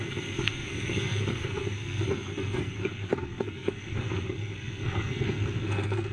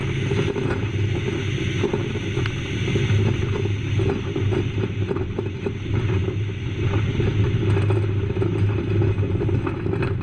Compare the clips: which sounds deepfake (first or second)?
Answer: first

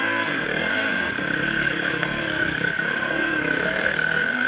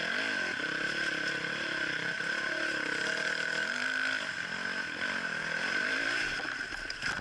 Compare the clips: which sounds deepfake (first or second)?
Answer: first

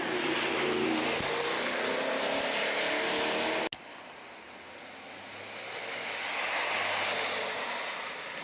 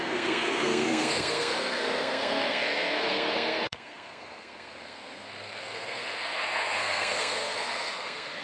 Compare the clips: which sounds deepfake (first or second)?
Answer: second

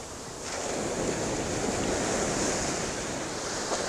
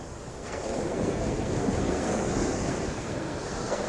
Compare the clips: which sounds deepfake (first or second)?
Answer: second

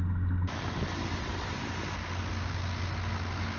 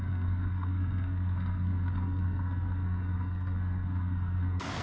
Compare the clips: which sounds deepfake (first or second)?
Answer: second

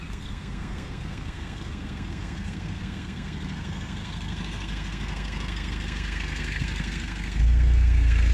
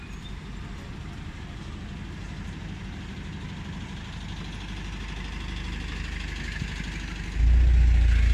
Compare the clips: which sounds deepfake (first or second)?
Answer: first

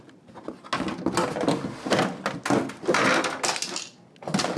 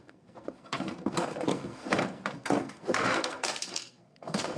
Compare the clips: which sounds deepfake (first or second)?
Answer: second